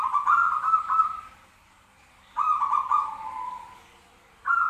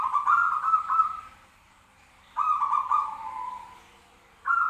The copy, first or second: second